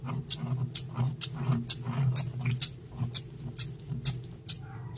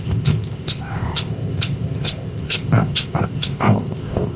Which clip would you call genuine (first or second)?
first